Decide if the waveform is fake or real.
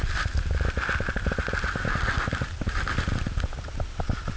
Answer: real